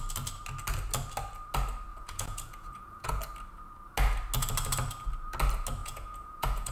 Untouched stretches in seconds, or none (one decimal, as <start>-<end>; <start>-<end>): 0.0-1.9; 3.2-5.8